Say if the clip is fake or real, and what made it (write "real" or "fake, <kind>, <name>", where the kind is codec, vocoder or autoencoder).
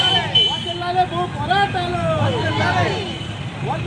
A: real